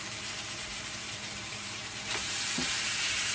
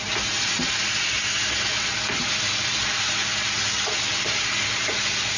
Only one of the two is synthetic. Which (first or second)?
first